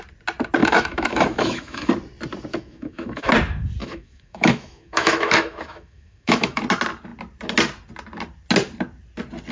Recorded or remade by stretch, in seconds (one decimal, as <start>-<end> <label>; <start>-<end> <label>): 0.0-0.6 recorded; 0.6-1.9 remade; 1.9-2.5 recorded; 2.5-3.3 remade; 3.3-3.8 recorded; 3.8-6.6 remade; 6.6-9.5 recorded